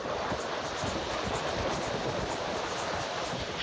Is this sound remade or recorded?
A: recorded